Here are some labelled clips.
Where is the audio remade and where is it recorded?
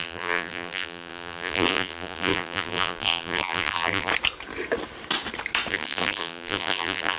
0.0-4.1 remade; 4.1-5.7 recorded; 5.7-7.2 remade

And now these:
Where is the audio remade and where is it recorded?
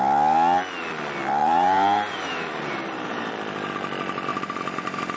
0.0-1.4 recorded; 1.4-3.3 remade; 3.3-4.3 recorded; 4.3-5.2 remade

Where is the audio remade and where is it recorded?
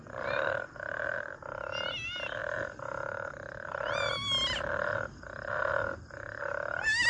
0.0-7.1 recorded